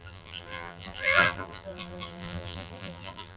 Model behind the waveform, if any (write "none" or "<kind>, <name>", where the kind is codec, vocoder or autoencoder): vocoder, BigVGAN v2